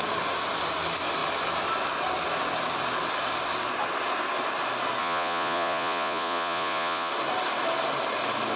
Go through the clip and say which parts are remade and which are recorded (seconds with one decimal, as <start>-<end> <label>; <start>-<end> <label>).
0.0-5.0 recorded; 5.0-7.1 remade; 7.1-8.6 recorded